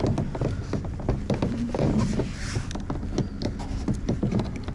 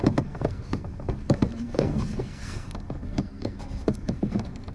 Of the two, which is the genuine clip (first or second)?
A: first